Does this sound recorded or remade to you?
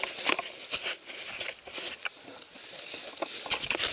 recorded